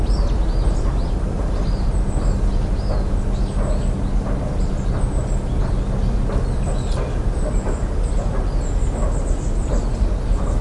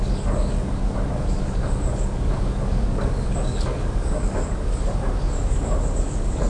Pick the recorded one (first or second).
first